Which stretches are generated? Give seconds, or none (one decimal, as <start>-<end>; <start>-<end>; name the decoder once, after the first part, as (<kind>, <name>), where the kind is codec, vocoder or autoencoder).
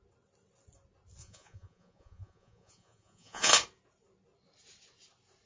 1.2-3.5 (vocoder, Vocos)